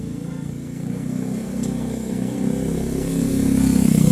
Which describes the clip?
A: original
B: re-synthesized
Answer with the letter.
B